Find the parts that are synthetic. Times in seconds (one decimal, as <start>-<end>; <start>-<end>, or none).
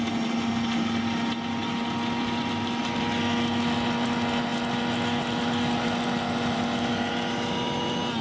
none